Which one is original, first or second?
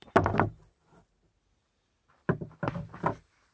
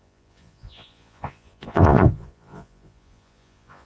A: first